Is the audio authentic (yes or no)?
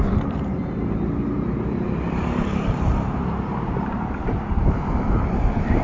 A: no